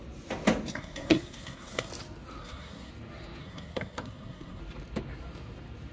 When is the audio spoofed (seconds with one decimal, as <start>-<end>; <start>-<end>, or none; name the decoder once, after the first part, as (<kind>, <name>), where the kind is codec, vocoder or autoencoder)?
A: 0.7-1.9 (codec, SNAC); 2.4-2.9; 3.4-4.6